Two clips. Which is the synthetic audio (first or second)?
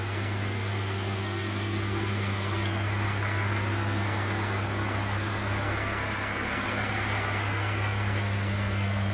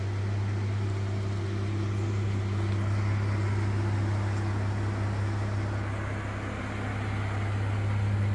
first